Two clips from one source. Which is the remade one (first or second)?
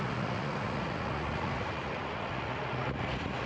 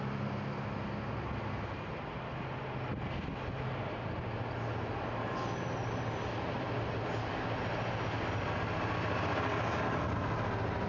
first